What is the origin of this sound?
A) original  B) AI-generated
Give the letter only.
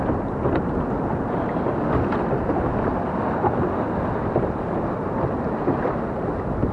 A